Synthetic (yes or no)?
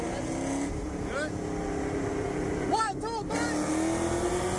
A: no